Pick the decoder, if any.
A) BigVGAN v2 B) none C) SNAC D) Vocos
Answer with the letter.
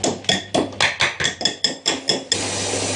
B